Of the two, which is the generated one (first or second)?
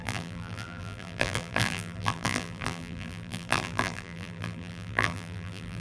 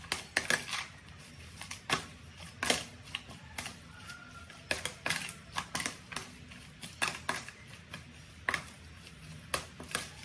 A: first